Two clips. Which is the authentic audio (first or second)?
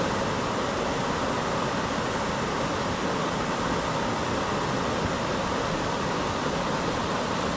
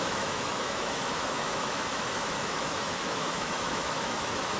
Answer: first